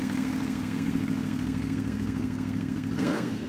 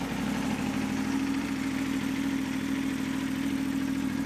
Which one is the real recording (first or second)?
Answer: second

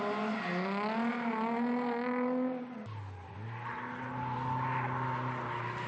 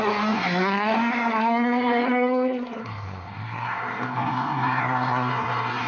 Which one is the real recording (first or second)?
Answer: first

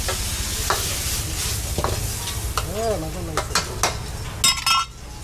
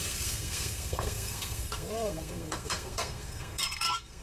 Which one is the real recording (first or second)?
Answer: first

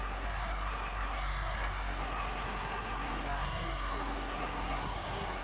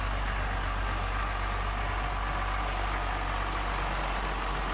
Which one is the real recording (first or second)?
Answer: second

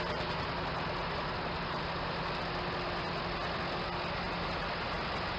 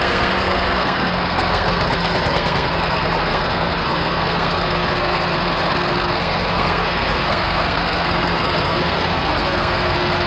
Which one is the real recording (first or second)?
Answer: first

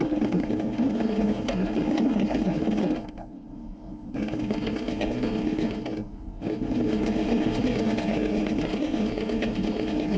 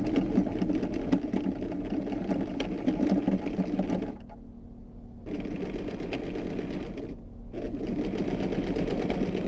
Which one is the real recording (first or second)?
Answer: second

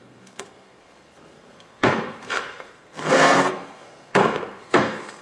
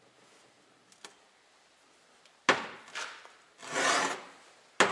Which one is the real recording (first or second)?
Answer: second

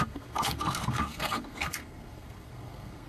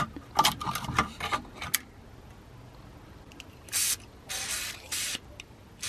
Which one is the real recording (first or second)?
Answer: second